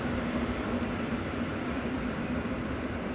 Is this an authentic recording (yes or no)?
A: no